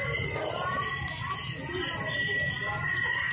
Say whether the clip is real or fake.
real